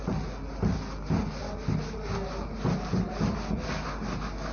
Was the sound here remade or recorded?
recorded